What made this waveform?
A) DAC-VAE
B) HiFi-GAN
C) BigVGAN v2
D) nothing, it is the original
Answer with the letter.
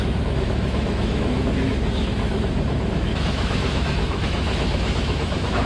A